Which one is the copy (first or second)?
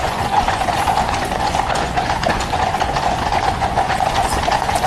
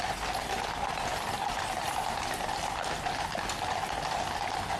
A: first